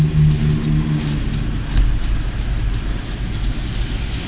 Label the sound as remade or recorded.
recorded